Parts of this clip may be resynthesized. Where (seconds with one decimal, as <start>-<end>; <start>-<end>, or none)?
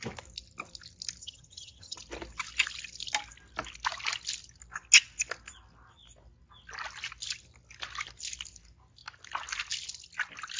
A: 1.2-2.0